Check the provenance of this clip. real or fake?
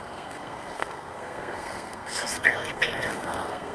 fake